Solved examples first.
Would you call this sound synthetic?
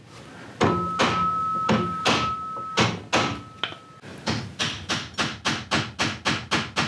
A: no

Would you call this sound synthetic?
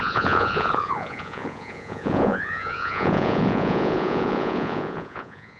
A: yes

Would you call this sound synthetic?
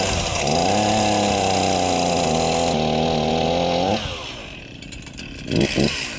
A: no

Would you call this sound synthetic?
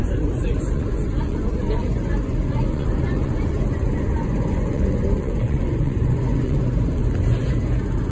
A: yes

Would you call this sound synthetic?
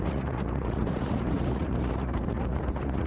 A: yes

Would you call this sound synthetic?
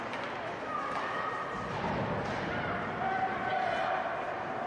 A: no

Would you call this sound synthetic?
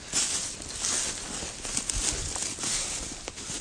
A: no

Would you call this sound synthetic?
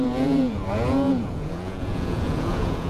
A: yes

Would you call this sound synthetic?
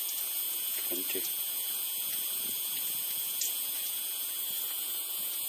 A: yes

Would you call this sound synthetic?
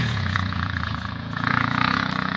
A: yes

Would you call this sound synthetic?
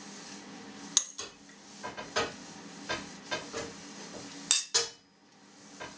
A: no